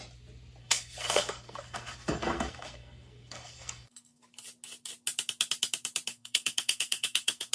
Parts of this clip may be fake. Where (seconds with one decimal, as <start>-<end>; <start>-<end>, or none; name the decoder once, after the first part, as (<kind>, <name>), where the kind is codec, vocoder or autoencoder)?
0.6-4.2 (codec, SNAC); 6.1-7.5